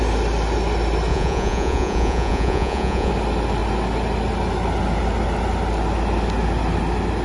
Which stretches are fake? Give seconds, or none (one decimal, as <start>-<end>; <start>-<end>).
1.1-3.1